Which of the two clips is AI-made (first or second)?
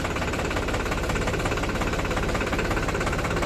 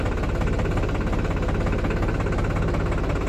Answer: first